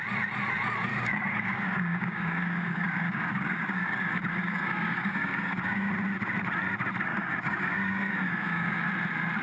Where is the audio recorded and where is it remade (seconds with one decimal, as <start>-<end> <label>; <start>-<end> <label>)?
0.0-0.9 recorded; 0.9-5.9 remade; 5.9-7.1 recorded; 7.1-8.9 remade; 8.9-9.4 recorded